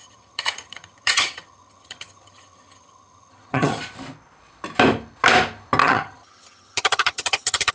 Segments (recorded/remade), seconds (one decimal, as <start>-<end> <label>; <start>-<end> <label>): 0.0-3.8 remade; 3.8-5.8 recorded; 5.8-7.7 remade